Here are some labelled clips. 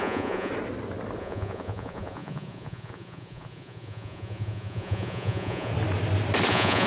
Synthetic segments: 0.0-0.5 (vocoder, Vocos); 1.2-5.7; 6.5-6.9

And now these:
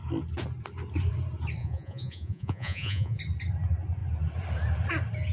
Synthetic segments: 1.6-3.2 (vocoder, Vocos)

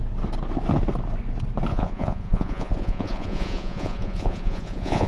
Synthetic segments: 1.7-5.1 (vocoder, Vocos)

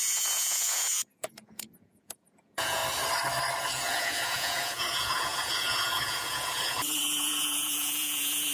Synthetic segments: 0.0-2.8 (vocoder, Vocos); 3.6-8.5

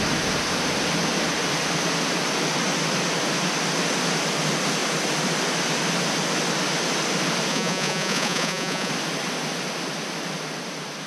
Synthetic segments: 7.5-8.9 (vocoder, Vocos)

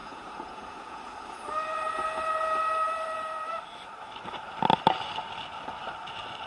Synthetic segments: 0.0-1.0 (vocoder, Vocos)

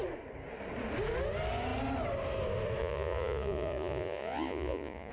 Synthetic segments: 2.8-5.1 (vocoder, Vocos)